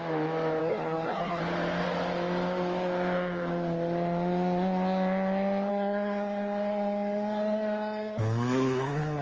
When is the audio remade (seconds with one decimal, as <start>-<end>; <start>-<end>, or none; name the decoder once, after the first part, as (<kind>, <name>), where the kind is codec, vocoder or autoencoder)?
0.6-1.4 (codec, SNAC); 5.7-9.2